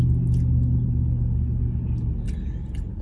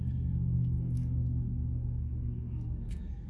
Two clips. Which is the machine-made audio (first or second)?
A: second